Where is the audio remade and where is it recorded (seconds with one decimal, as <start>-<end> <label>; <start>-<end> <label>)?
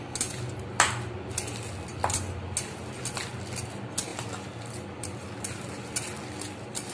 0.0-6.9 recorded